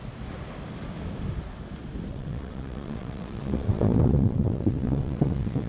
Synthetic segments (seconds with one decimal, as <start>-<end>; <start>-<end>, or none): 2.1-5.7